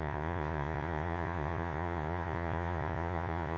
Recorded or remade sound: remade